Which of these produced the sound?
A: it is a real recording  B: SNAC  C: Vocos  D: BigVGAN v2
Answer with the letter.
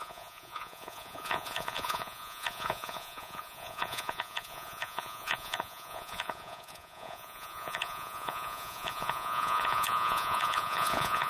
C